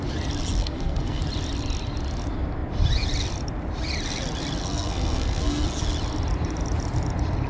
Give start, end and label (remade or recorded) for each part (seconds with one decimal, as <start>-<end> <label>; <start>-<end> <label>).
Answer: 0.0-0.6 recorded; 0.6-1.2 remade; 1.2-4.6 recorded; 4.6-5.6 remade; 5.6-7.5 recorded